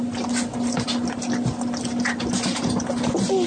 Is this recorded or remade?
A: recorded